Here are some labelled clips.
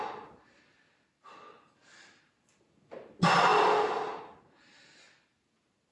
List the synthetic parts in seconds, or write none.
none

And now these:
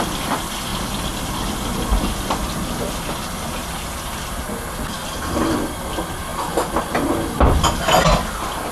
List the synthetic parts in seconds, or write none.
0.7-4.6 (vocoder, BigVGAN v2)

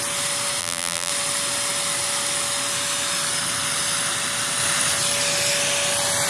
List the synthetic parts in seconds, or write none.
0.6-1.1 (vocoder, BigVGAN v2)